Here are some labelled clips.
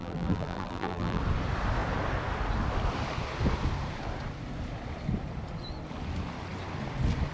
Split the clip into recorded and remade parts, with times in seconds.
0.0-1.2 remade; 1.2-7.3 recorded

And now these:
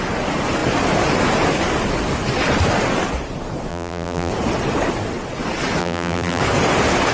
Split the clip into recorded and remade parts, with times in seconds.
0.0-3.7 recorded; 3.7-4.3 remade; 4.3-5.8 recorded; 5.8-6.4 remade; 6.4-7.1 recorded

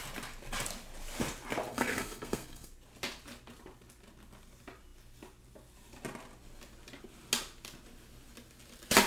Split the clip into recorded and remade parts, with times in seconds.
0.0-1.7 recorded; 1.7-2.7 remade; 2.7-9.1 recorded

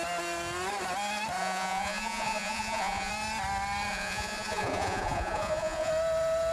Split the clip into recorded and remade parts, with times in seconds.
0.0-1.4 recorded; 1.4-3.1 remade; 3.1-3.9 recorded; 3.9-5.9 remade; 5.9-6.5 recorded

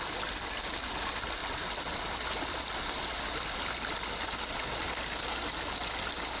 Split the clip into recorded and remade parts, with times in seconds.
0.0-6.4 recorded